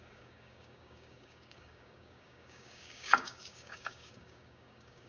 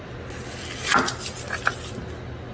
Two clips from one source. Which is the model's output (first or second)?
first